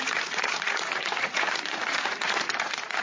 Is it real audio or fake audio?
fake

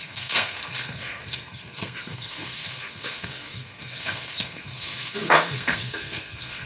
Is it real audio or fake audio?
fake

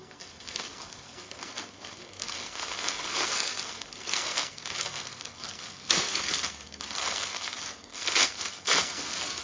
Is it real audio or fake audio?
fake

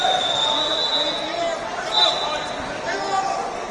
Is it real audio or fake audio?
real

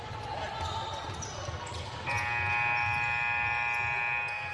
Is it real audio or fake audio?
real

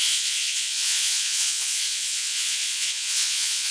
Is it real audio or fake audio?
fake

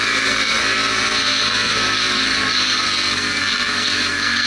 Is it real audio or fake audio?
fake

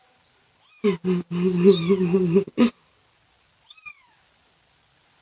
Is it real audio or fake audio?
real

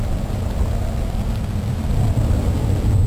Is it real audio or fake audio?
real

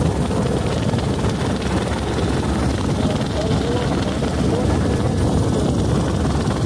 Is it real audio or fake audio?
real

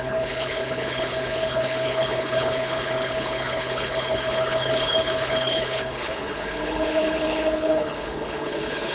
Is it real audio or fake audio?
fake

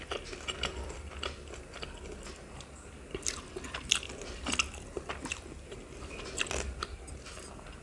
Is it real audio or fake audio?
real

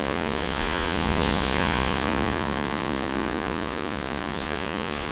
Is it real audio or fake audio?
fake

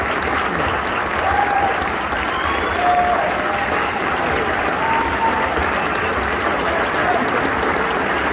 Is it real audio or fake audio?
real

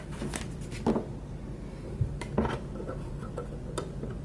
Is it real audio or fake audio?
real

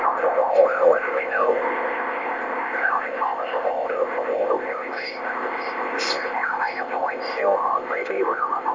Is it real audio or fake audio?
fake